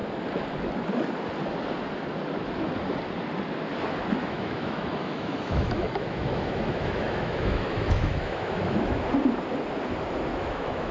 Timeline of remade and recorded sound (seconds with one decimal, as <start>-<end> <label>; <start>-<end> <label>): 0.0-4.2 recorded; 4.2-9.1 remade; 9.1-10.3 recorded; 10.3-10.9 remade

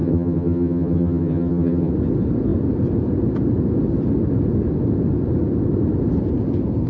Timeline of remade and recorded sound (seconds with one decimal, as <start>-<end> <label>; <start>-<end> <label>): 0.0-1.9 remade; 1.9-6.9 recorded

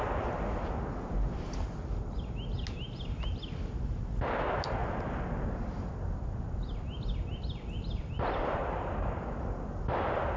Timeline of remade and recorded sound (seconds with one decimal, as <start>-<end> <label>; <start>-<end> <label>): 0.0-10.4 recorded